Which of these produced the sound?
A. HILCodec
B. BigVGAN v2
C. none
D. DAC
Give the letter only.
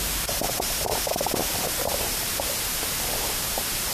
B